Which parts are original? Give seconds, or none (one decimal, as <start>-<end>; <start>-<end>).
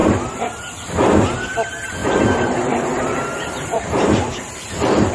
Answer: 0.7-2.0